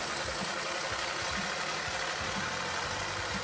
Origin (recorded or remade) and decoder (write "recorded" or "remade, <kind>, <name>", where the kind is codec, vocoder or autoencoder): recorded